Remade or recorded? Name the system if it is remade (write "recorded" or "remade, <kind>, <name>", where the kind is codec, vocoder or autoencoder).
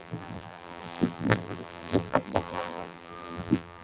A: remade, vocoder, BigVGAN v2